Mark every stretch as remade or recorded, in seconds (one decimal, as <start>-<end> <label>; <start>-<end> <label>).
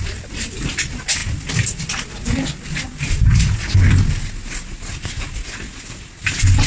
0.0-6.7 recorded